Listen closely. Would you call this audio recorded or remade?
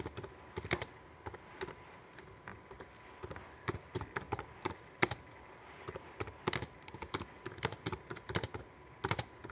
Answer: recorded